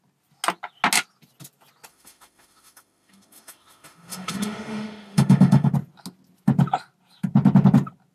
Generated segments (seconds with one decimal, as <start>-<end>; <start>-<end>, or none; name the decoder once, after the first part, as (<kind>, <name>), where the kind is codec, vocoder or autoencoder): 1.9-5.7 (autoencoder, DAC-VAE)